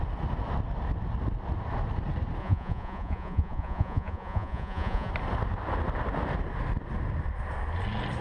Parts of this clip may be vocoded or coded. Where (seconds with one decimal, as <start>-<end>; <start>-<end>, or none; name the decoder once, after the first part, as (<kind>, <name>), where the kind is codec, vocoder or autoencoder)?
2.4-5.1 (vocoder, Vocos)